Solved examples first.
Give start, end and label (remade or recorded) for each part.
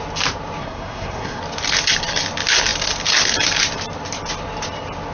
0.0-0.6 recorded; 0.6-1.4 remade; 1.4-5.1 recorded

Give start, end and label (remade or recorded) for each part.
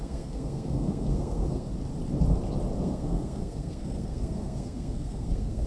0.0-1.7 remade; 1.7-2.8 recorded; 2.8-5.7 remade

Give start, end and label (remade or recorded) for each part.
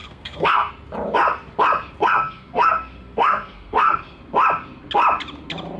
0.0-0.7 remade; 0.7-2.0 recorded; 2.0-4.2 remade; 4.2-5.8 recorded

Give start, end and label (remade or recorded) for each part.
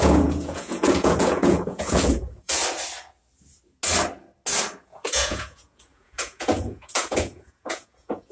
0.0-2.6 remade; 2.6-4.8 recorded; 4.8-8.3 remade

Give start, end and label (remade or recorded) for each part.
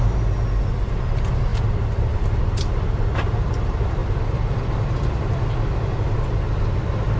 0.0-1.5 recorded; 1.5-2.4 remade; 2.4-4.0 recorded; 4.0-6.7 remade; 6.7-7.2 recorded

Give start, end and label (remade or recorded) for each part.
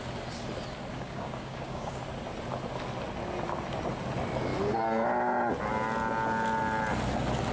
0.0-0.9 recorded; 0.9-2.0 remade; 2.0-7.5 recorded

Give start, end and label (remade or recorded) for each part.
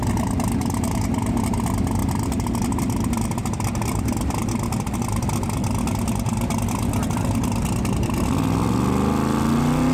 0.0-9.9 recorded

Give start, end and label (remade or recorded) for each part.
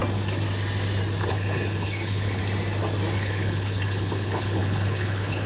0.0-1.3 recorded; 1.3-2.4 remade; 2.4-3.1 recorded; 3.1-5.5 remade